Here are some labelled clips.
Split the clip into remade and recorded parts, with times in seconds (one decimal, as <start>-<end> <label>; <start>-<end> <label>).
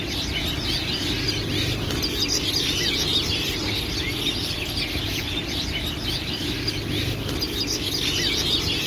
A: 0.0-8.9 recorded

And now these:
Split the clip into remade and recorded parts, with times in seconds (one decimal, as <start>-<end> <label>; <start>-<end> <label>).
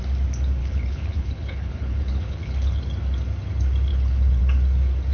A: 0.0-0.6 recorded; 0.6-2.8 remade; 2.8-3.9 recorded; 3.9-4.4 remade; 4.4-5.1 recorded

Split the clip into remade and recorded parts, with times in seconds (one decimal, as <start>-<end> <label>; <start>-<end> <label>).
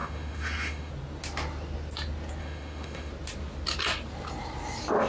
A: 0.0-0.9 remade; 0.9-2.4 recorded; 2.4-3.1 remade; 3.1-5.1 recorded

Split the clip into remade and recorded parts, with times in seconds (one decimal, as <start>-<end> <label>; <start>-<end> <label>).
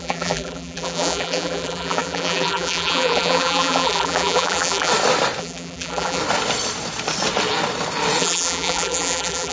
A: 0.0-4.9 remade; 4.9-5.4 recorded; 5.4-6.2 remade; 6.2-8.2 recorded; 8.2-9.5 remade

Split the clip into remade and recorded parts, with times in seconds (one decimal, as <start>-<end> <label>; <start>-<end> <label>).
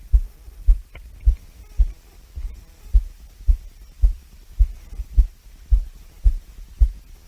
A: 0.0-7.3 recorded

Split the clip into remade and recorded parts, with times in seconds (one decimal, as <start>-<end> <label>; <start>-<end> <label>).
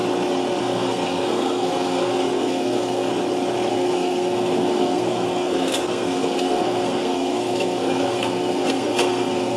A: 0.0-0.6 recorded; 0.6-3.1 remade; 3.1-3.7 recorded; 3.7-9.6 remade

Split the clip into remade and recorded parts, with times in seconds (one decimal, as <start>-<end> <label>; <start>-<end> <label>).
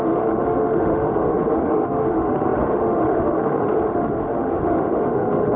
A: 0.0-5.6 remade